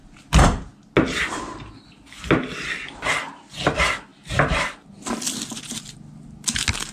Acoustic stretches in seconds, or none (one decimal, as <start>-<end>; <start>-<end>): 0.0-4.1; 4.7-6.9